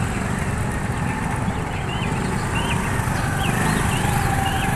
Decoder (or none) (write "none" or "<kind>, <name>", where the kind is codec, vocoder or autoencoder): none